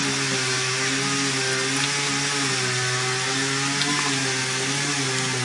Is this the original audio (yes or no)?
yes